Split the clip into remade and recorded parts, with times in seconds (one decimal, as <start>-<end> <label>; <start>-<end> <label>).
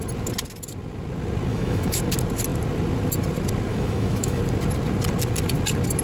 0.0-1.5 recorded; 1.5-2.0 remade; 2.0-3.7 recorded; 3.7-4.4 remade; 4.4-6.0 recorded